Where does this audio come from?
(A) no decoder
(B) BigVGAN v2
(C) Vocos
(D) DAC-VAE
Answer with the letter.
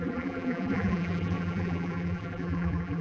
B